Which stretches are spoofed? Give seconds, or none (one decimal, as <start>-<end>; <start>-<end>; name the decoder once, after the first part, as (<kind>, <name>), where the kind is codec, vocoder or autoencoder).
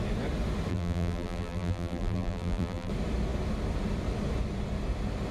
0.7-2.9 (vocoder, BigVGAN v2)